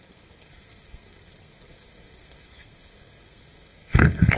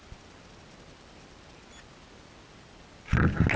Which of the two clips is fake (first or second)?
first